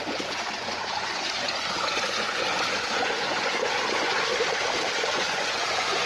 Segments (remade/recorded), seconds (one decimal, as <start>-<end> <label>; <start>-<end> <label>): 0.0-4.3 remade; 4.3-5.0 recorded; 5.0-6.1 remade